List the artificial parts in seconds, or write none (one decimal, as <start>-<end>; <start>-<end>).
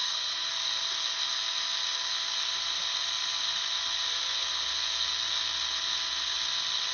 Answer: 0.0-0.5